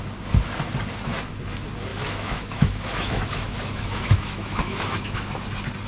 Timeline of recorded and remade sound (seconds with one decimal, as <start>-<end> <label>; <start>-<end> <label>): 0.0-1.9 recorded; 1.9-5.4 remade; 5.4-5.9 recorded